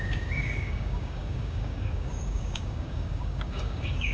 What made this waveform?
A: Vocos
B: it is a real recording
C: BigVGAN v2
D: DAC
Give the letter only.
D